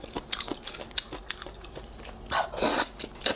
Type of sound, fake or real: real